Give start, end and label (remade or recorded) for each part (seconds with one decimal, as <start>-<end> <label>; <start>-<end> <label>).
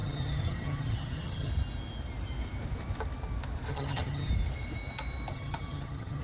0.0-1.5 remade; 1.5-3.7 recorded; 3.7-4.3 remade; 4.3-5.3 recorded; 5.3-6.2 remade